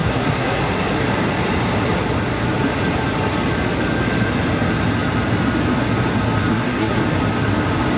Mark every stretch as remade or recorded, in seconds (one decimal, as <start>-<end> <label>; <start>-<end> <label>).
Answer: 0.0-0.6 remade; 0.6-6.5 recorded; 6.5-7.0 remade; 7.0-8.0 recorded